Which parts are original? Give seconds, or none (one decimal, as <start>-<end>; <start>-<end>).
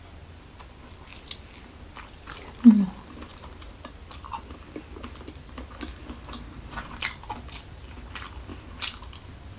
0.0-9.6